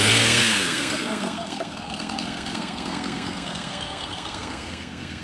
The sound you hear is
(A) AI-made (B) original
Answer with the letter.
A